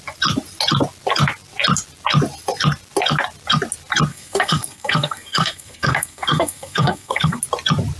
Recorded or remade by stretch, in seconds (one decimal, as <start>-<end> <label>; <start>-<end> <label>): 0.0-4.1 recorded; 4.1-7.4 remade; 7.4-8.0 recorded